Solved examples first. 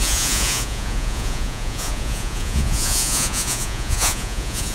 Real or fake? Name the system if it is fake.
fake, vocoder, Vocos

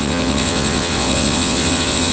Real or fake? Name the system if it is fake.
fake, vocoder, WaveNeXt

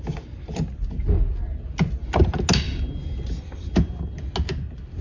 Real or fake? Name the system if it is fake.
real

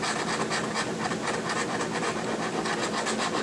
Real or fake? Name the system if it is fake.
real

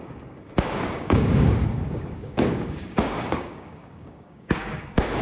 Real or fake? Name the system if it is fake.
fake, codec, DAC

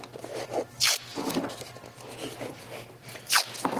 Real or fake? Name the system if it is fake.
real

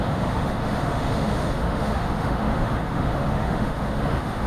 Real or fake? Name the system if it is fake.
fake, autoencoder, DAC-VAE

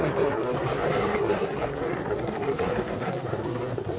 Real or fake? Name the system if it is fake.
fake, codec, SNAC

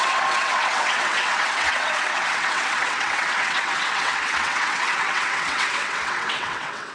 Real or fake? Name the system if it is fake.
fake, vocoder, WaveNeXt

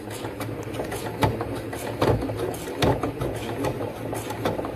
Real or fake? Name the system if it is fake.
real